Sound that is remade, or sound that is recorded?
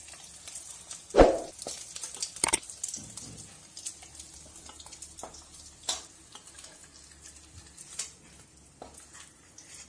recorded